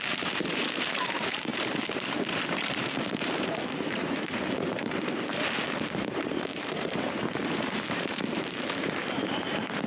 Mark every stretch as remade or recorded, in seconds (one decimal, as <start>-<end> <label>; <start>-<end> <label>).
0.0-9.9 remade